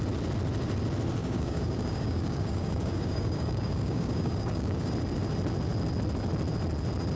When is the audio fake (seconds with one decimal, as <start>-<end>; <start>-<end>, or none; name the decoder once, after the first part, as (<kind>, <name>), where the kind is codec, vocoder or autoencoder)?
1.2-4.9 (codec, DAC)